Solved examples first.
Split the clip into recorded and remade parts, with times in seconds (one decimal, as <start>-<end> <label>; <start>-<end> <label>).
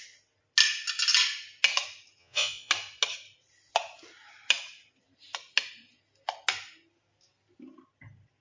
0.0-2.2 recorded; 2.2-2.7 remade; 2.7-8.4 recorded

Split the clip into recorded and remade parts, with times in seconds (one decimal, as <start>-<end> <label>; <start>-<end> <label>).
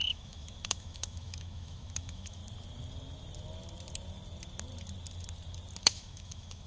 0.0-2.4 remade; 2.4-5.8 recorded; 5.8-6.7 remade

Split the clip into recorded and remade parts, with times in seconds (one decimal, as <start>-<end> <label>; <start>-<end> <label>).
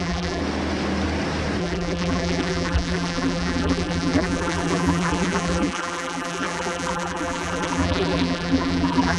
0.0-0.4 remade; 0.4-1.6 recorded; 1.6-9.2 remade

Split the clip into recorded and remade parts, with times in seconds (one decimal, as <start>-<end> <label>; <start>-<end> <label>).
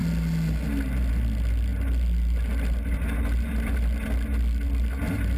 0.0-5.4 recorded